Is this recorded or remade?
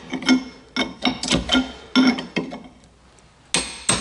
recorded